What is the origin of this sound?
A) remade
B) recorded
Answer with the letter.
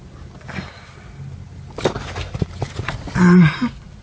B